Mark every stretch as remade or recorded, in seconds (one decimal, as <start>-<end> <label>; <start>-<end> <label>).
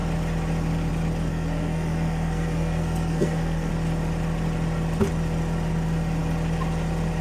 0.0-1.3 recorded; 1.3-3.7 remade; 3.7-7.2 recorded